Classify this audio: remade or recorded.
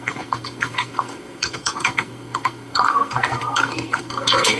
remade